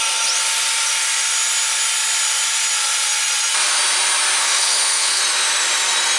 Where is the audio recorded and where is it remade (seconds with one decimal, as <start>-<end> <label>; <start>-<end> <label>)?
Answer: 0.0-4.4 recorded; 4.4-5.2 remade; 5.2-6.2 recorded